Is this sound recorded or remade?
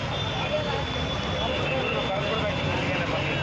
recorded